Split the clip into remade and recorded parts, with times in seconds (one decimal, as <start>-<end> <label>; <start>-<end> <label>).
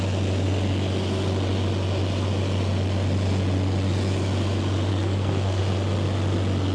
0.0-4.9 recorded; 4.9-5.6 remade; 5.6-6.7 recorded